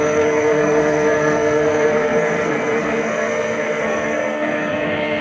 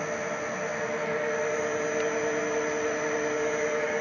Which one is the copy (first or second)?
first